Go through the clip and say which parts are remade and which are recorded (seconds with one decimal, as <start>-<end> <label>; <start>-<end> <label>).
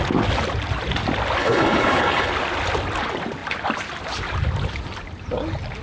0.0-1.4 recorded; 1.4-2.3 remade; 2.3-5.8 recorded